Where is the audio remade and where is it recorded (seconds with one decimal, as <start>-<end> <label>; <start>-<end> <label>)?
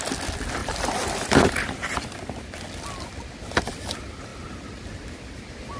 0.0-0.6 recorded; 0.6-2.6 remade; 2.6-4.3 recorded; 4.3-4.9 remade; 4.9-5.8 recorded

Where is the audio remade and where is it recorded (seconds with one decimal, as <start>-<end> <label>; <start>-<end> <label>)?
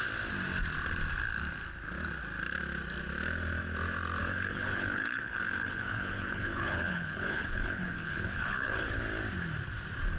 0.0-4.2 recorded; 4.2-9.0 remade; 9.0-10.2 recorded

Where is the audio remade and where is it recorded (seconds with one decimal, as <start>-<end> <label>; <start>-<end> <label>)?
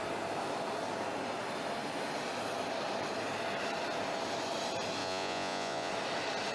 0.0-5.0 recorded; 5.0-5.9 remade; 5.9-6.5 recorded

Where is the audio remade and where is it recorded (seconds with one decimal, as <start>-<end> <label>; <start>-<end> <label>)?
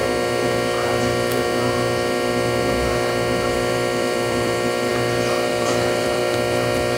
0.0-3.5 recorded; 3.5-4.9 remade; 4.9-5.5 recorded; 5.5-6.2 remade; 6.2-7.0 recorded